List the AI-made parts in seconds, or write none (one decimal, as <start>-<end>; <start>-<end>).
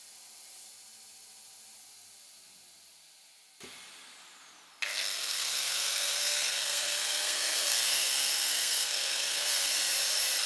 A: 4.9-9.7